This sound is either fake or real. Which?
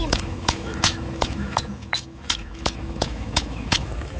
fake